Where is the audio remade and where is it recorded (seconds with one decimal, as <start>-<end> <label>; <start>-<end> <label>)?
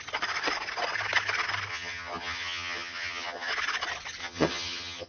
0.0-1.7 recorded; 1.7-3.5 remade; 3.5-4.2 recorded; 4.2-5.1 remade